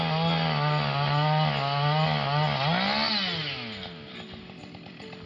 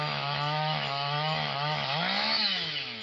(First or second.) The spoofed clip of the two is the second